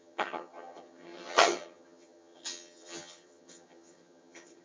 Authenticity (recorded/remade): remade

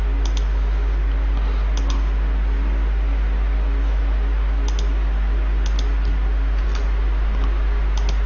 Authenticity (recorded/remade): recorded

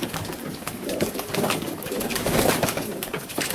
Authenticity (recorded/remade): remade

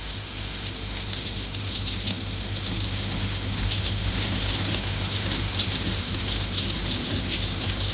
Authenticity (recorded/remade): remade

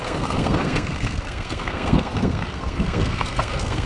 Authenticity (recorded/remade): remade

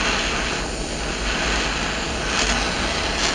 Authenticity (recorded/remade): recorded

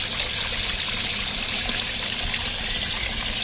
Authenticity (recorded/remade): recorded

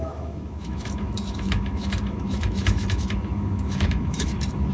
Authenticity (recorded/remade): remade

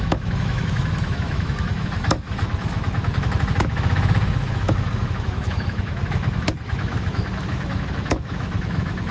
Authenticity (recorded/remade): remade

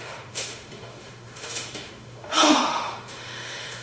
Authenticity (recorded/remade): remade